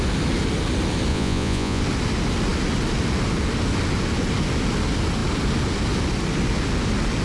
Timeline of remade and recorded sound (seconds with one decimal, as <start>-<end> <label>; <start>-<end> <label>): 0.0-1.1 recorded; 1.1-1.8 remade; 1.8-7.2 recorded